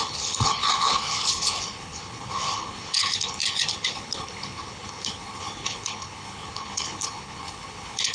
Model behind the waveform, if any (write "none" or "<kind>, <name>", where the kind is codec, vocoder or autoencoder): codec, HILCodec